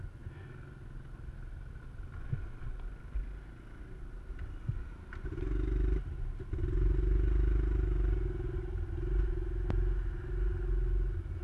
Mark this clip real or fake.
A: real